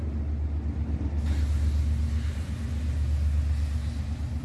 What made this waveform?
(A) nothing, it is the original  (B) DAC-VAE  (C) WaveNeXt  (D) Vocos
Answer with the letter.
A